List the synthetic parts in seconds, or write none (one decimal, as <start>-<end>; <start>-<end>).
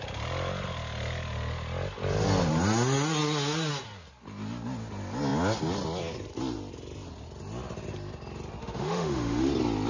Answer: 8.6-9.5